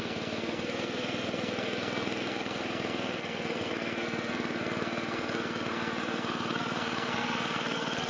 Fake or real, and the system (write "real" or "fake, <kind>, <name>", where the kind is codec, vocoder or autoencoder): fake, codec, SNAC